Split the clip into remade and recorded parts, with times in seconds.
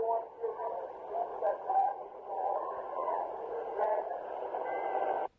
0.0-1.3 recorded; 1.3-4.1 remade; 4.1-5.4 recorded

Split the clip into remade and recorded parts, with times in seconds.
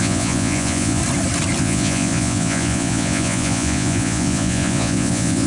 0.0-1.0 remade; 1.0-1.6 recorded; 1.6-5.5 remade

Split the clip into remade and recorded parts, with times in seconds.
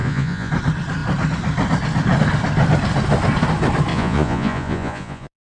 0.0-0.5 remade; 0.5-3.9 recorded; 3.9-5.5 remade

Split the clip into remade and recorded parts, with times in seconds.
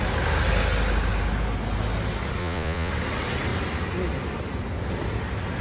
0.0-2.4 recorded; 2.4-2.9 remade; 2.9-5.6 recorded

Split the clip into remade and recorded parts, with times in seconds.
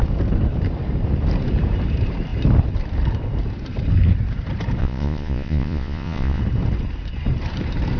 0.0-4.8 recorded; 4.8-6.4 remade; 6.4-8.0 recorded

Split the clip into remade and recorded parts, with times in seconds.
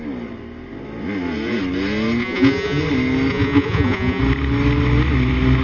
0.0-2.2 recorded; 2.2-2.8 remade; 2.8-3.3 recorded; 3.3-4.2 remade; 4.2-5.6 recorded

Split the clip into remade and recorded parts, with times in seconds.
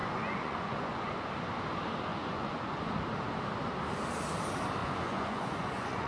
0.0-1.1 remade; 1.1-2.1 recorded; 2.1-2.9 remade; 2.9-4.8 recorded; 4.8-6.1 remade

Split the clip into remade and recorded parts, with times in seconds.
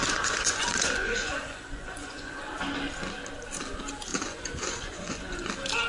0.0-2.5 remade; 2.5-4.1 recorded; 4.1-5.5 remade; 5.5-5.9 recorded